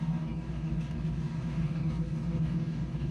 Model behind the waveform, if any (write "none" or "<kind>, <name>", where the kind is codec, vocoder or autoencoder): codec, DAC